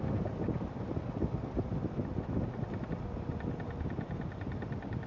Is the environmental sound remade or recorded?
recorded